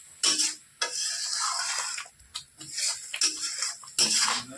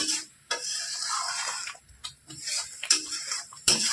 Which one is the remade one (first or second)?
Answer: second